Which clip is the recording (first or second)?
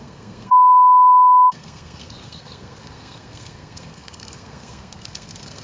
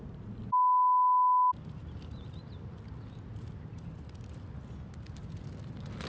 second